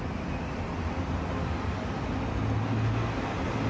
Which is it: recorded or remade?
recorded